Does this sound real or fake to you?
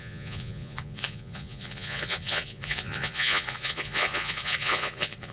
fake